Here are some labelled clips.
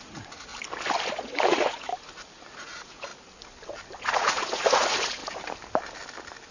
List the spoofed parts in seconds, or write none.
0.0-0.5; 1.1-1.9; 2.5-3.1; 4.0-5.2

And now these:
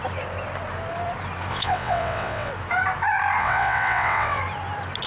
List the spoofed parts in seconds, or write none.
1.5-2.5; 3.4-4.4

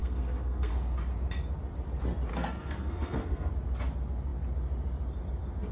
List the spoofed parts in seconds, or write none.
0.0-0.7; 2.3-3.5

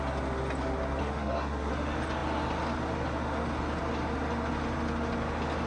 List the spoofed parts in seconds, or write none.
1.0-1.7

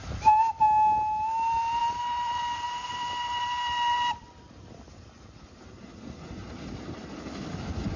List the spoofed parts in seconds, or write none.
0.0-0.6; 1.8-4.6; 6.4-7.1

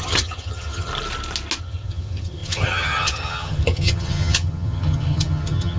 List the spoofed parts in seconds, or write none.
0.0-0.9; 1.6-5.8